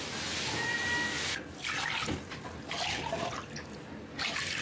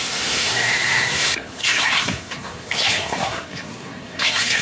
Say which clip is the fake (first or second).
second